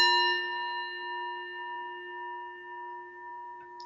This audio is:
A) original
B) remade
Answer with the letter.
A